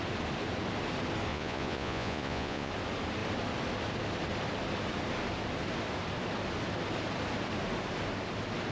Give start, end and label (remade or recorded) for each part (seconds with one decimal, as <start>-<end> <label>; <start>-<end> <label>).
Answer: 0.0-1.3 recorded; 1.3-2.7 remade; 2.7-8.7 recorded